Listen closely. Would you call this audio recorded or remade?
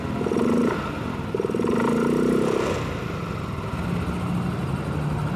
recorded